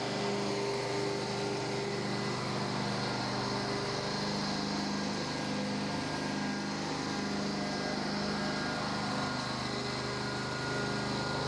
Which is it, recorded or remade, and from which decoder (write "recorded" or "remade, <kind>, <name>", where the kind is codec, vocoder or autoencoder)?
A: recorded